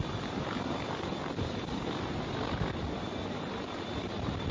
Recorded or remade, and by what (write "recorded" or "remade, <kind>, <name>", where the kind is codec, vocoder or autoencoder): recorded